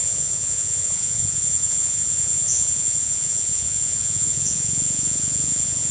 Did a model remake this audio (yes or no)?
yes